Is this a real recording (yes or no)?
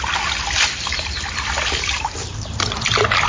no